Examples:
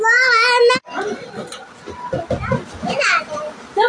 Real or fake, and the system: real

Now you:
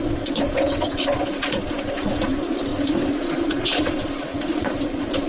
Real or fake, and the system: fake, vocoder, Vocos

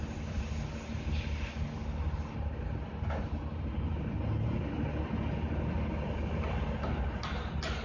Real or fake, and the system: real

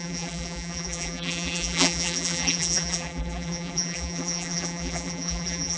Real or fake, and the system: fake, vocoder, BigVGAN v2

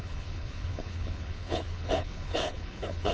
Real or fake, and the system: fake, codec, HILCodec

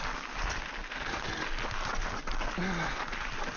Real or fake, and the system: real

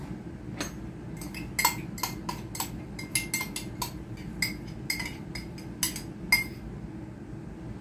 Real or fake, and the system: real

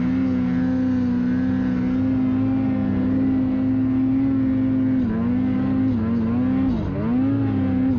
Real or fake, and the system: real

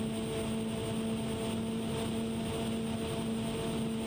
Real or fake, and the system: real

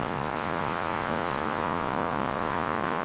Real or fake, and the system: fake, vocoder, Vocos